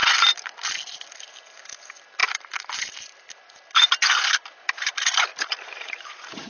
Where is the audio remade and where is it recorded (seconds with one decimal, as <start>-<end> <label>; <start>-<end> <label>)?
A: 0.0-5.3 recorded; 5.3-6.5 remade